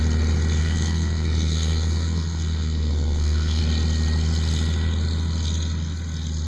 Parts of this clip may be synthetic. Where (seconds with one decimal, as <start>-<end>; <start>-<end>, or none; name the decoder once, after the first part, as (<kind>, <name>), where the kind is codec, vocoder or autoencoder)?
0.6-3.6 (codec, SNAC)